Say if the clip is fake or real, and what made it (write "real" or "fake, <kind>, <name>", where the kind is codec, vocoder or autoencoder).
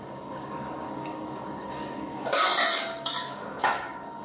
fake, codec, DAC